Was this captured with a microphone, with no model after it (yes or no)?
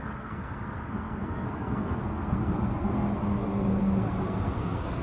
no